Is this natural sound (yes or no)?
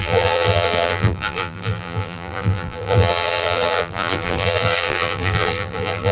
no